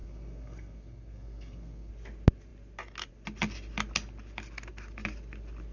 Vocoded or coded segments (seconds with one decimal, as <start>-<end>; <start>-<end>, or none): 0.0-1.9